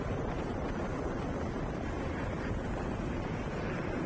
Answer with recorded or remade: recorded